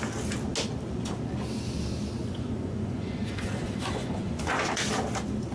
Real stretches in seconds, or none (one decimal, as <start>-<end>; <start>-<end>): 0.0-2.2; 4.7-5.5